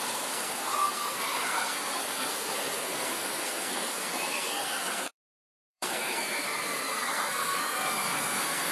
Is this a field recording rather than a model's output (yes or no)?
no